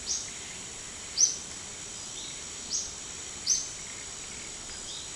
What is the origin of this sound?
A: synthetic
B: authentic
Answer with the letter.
B